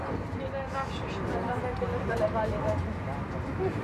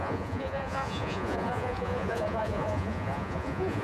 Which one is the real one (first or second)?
first